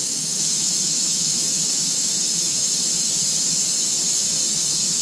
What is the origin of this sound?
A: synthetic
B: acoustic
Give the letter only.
A